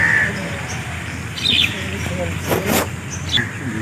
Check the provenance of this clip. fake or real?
real